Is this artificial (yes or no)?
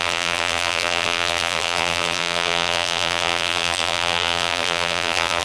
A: yes